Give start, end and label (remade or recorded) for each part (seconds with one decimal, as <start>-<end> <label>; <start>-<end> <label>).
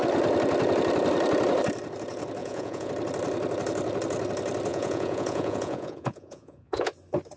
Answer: 0.0-2.4 recorded; 2.4-2.9 remade; 2.9-4.7 recorded; 4.7-6.9 remade; 6.9-7.4 recorded